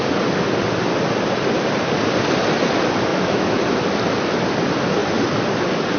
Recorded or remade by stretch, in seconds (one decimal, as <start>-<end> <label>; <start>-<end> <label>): 0.0-3.1 recorded; 3.1-3.6 remade; 3.6-6.0 recorded